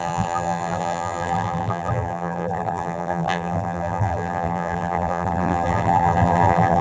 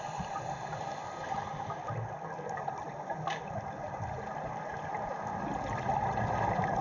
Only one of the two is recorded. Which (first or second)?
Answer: second